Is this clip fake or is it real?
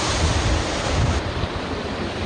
real